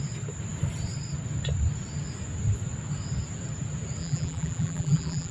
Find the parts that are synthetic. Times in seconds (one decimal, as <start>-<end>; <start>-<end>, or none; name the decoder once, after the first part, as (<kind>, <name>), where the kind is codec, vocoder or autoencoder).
4.0-5.3 (vocoder, BigVGAN v2)